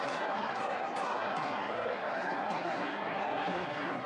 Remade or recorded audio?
remade